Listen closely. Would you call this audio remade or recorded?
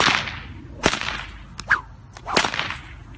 recorded